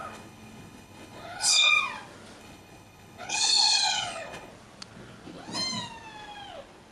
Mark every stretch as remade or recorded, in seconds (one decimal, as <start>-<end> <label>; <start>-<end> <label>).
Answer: 0.0-1.7 remade; 1.7-2.4 recorded; 2.4-4.5 remade; 4.5-6.9 recorded